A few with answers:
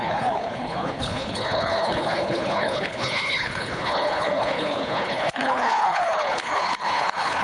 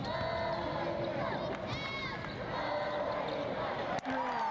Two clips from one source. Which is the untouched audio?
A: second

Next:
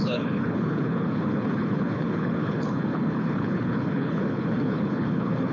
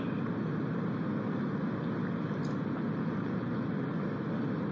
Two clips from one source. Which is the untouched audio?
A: second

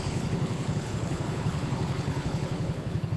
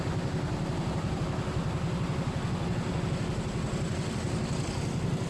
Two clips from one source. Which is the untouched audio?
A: second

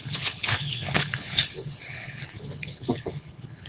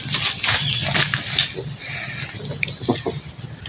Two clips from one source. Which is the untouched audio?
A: second